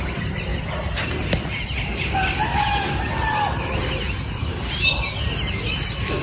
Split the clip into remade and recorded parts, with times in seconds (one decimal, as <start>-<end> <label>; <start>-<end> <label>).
0.0-6.2 recorded

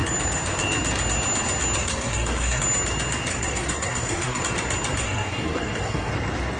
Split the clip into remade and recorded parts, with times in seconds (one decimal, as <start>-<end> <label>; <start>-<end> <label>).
0.0-1.8 recorded; 1.8-2.6 remade; 2.6-3.3 recorded; 3.3-4.4 remade; 4.4-5.0 recorded; 5.0-6.1 remade; 6.1-6.6 recorded

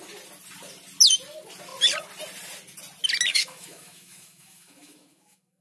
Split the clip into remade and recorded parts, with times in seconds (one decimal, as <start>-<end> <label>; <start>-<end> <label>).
0.0-3.3 recorded; 3.3-5.6 remade

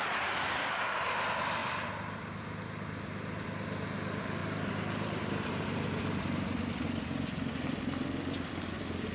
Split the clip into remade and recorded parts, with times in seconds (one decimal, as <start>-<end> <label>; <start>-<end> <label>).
0.0-9.1 recorded

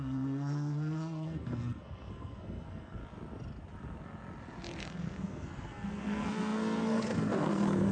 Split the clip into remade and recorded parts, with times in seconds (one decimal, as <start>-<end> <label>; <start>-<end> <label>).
0.0-3.0 remade; 3.0-4.8 recorded; 4.8-7.9 remade

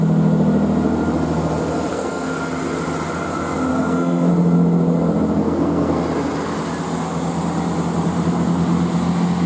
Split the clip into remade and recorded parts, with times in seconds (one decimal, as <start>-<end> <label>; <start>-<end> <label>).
0.0-1.9 recorded; 1.9-2.5 remade; 2.5-3.7 recorded; 3.7-4.3 remade; 4.3-5.4 recorded; 5.4-6.0 remade; 6.0-9.5 recorded